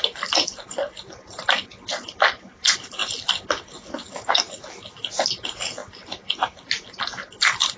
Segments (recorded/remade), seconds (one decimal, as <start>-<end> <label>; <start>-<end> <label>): 0.0-7.8 recorded